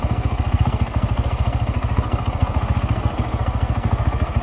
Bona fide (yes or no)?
no